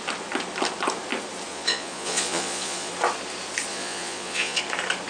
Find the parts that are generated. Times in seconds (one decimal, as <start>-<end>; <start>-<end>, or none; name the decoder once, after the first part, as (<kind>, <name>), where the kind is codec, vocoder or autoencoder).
1.5-2.9 (vocoder, Vocos); 3.7-4.6

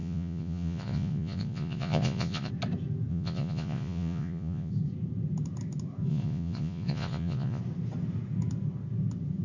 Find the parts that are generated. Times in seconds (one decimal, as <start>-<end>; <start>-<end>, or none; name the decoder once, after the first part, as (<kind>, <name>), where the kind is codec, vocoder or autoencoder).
0.0-2.5 (vocoder, Vocos); 3.1-4.7; 6.1-7.6

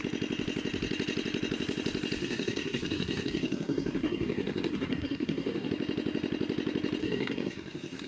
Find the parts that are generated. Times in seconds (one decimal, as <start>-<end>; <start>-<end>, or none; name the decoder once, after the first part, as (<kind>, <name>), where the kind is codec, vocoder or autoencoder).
2.2-5.7 (codec, SNAC); 7.0-8.1

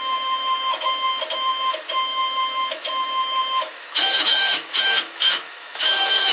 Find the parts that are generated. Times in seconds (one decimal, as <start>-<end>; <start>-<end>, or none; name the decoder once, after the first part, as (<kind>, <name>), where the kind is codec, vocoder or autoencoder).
0.0-6.3 (autoencoder, DAC-VAE)

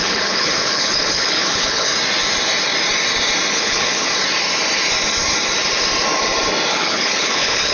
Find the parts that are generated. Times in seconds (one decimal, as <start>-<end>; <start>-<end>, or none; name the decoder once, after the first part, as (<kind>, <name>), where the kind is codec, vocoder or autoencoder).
0.0-1.9 (codec, HILCodec); 3.5-4.1; 6.7-7.7

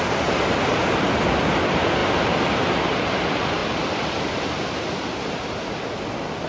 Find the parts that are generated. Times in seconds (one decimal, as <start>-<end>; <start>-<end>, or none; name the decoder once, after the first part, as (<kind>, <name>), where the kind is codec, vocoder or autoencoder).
none

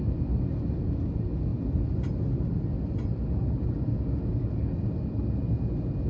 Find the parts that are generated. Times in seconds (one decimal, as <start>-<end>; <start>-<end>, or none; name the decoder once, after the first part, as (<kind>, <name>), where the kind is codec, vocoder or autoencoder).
none